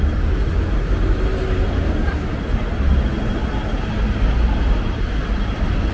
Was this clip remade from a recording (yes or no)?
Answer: no